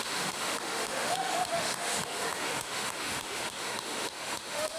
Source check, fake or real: fake